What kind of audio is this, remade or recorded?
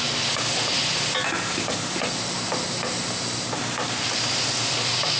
recorded